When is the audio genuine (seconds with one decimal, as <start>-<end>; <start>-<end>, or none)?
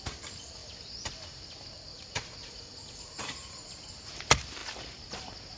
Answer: 0.0-1.9; 3.7-5.6